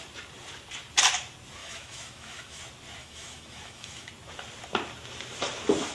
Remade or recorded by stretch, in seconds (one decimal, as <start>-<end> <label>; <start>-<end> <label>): 0.0-1.6 recorded; 1.6-2.6 remade; 2.6-3.0 recorded; 3.0-4.1 remade; 4.1-5.9 recorded